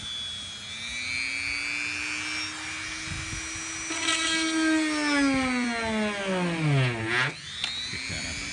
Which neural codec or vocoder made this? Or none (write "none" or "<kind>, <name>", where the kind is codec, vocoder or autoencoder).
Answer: none